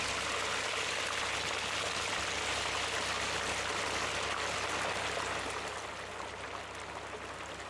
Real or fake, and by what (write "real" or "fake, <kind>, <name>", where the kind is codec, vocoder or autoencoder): real